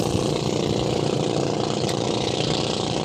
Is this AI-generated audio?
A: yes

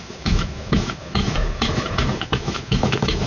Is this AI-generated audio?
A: yes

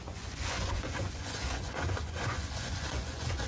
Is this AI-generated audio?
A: yes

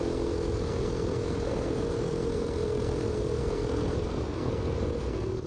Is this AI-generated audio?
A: yes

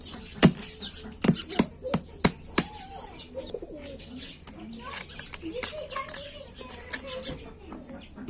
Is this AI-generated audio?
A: no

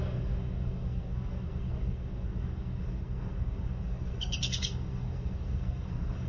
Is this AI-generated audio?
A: yes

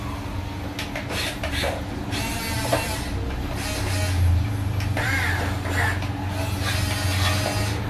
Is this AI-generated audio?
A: no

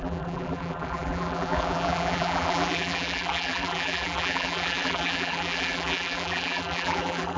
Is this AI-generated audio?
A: yes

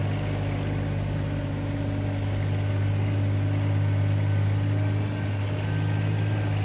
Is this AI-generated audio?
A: no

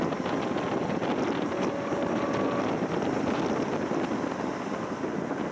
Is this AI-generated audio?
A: no